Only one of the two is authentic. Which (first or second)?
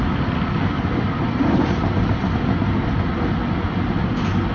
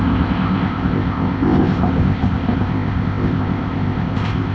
first